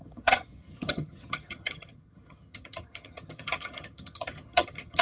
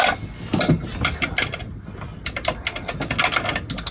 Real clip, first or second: second